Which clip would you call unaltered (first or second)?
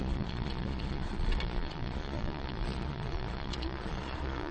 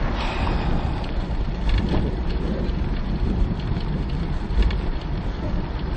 second